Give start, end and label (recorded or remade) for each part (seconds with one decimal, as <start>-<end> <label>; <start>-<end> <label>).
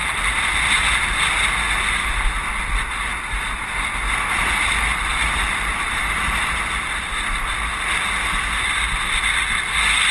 0.0-1.1 remade; 1.1-5.1 recorded; 5.1-6.6 remade; 6.6-10.1 recorded